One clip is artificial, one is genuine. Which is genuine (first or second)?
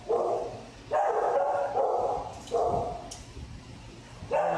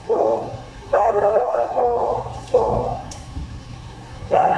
first